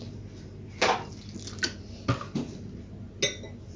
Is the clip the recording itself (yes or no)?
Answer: yes